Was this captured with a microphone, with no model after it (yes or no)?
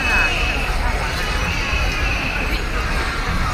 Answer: yes